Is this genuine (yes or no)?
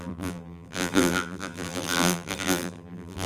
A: no